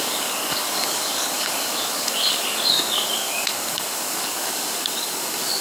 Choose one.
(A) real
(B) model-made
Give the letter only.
B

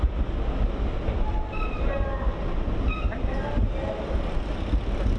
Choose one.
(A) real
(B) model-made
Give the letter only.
A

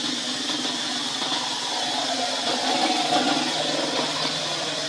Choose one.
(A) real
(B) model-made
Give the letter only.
A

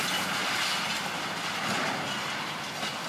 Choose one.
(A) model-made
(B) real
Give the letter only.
A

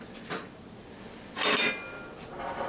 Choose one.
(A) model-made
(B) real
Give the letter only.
B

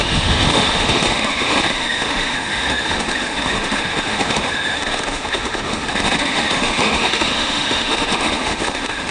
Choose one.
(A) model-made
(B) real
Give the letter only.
A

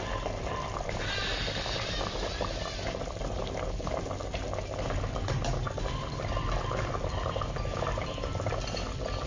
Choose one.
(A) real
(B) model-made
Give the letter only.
A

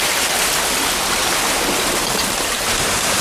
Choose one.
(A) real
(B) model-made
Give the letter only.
B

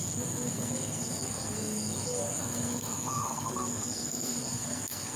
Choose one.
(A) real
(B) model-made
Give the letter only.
B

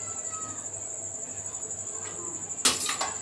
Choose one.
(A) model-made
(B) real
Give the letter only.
B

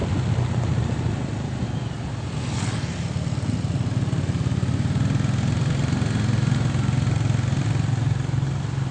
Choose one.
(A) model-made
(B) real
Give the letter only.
B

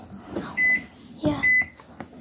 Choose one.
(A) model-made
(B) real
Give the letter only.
B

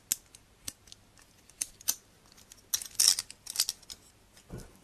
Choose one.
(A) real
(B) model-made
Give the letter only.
A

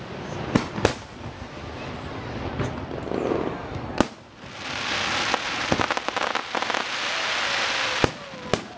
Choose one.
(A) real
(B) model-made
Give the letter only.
A